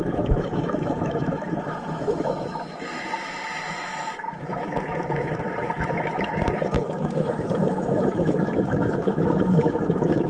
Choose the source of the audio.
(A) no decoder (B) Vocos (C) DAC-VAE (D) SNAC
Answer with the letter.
C